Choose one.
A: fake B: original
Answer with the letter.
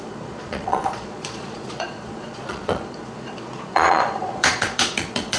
A